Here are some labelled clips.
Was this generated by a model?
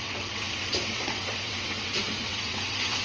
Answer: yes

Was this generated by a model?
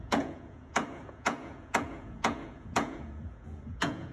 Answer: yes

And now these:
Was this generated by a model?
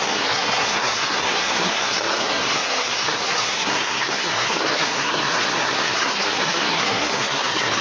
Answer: yes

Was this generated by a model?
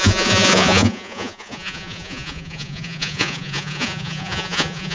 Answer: yes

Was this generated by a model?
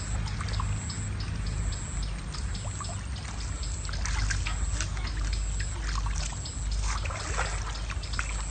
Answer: no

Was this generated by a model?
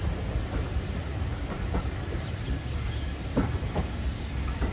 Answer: no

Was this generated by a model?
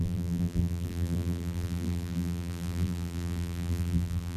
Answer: yes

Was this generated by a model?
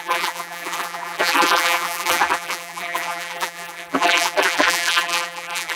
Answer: yes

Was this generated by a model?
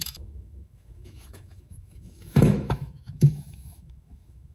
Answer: yes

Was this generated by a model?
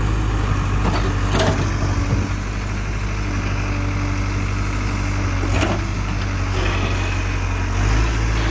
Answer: no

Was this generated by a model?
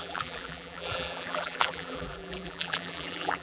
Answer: yes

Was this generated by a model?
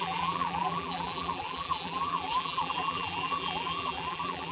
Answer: yes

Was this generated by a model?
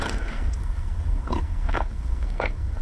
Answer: yes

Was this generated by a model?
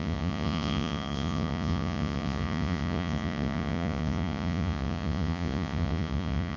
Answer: yes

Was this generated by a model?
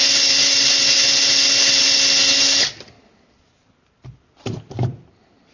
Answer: no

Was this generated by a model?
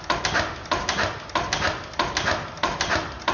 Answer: no